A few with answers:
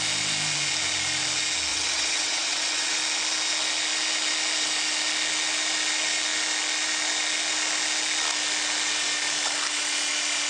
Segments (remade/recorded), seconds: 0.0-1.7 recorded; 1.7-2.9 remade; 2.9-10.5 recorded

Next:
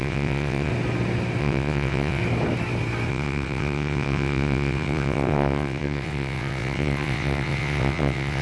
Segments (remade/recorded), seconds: 0.0-0.7 remade; 0.7-1.4 recorded; 1.4-2.2 remade; 2.2-3.1 recorded; 3.1-8.4 remade

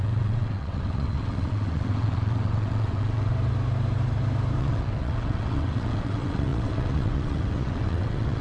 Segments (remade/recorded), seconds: 0.0-3.3 remade; 3.3-4.6 recorded; 4.6-8.4 remade

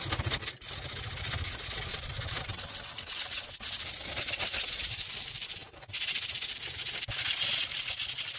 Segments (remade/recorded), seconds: 0.0-1.9 recorded; 1.9-3.5 remade; 3.5-8.4 recorded

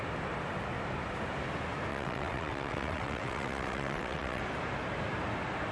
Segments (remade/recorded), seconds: 0.0-1.9 recorded; 1.9-4.4 remade; 4.4-5.7 recorded